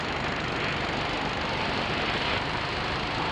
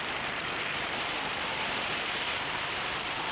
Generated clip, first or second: second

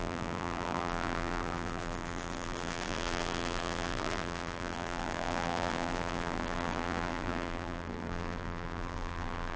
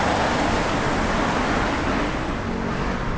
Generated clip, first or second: first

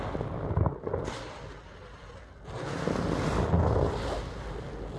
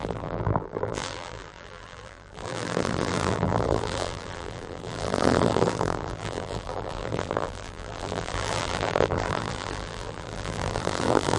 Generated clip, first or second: second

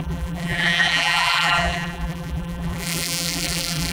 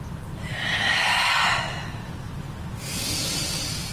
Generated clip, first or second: first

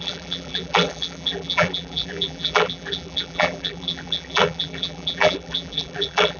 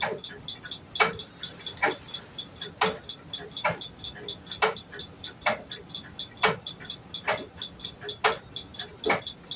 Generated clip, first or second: first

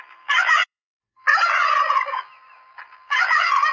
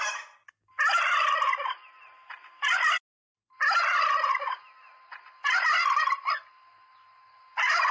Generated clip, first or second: first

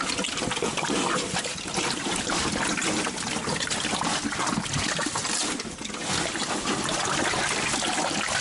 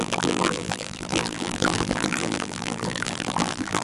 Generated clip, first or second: second